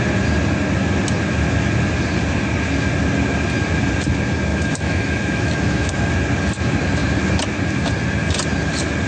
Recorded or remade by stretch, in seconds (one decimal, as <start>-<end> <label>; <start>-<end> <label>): 0.0-4.5 recorded; 4.5-6.1 remade; 6.1-9.1 recorded